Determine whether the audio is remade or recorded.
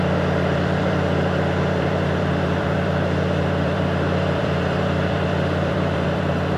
remade